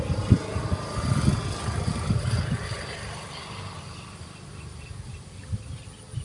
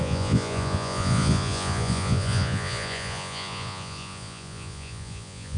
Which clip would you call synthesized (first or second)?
second